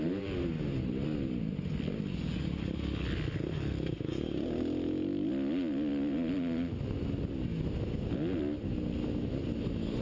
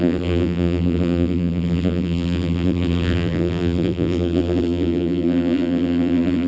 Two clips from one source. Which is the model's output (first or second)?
second